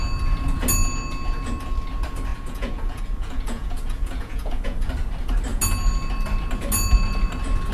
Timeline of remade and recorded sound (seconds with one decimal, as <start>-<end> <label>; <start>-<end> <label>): 0.0-2.3 recorded; 2.3-4.9 remade; 4.9-7.7 recorded